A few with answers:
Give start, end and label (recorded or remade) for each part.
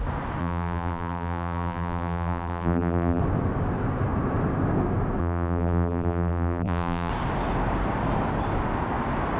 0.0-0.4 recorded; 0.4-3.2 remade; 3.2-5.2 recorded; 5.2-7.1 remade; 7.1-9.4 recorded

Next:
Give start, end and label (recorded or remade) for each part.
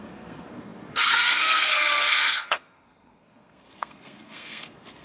0.0-5.0 remade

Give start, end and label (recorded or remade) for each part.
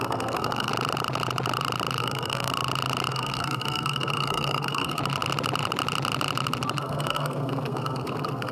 0.0-0.7 remade; 0.7-2.0 recorded; 2.0-2.5 remade; 2.5-3.1 recorded; 3.1-5.0 remade; 5.0-6.8 recorded; 6.8-8.5 remade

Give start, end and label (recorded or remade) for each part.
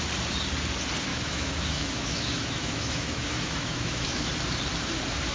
0.0-1.1 recorded; 1.1-4.3 remade; 4.3-5.3 recorded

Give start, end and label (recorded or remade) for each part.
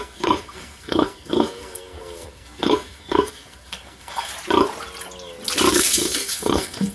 0.0-4.3 remade; 4.3-5.7 recorded; 5.7-6.9 remade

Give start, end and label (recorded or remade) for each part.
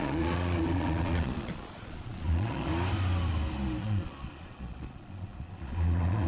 0.0-2.7 remade; 2.7-3.8 recorded; 3.8-6.3 remade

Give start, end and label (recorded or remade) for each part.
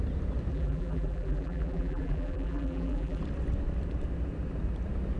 0.0-0.5 recorded; 0.5-3.2 remade; 3.2-5.2 recorded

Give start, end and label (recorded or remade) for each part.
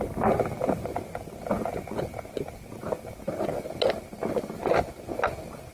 0.0-5.7 recorded